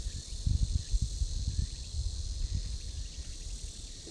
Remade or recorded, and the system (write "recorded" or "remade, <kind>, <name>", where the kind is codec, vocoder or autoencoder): recorded